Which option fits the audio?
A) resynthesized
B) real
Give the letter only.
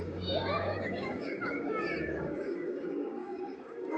A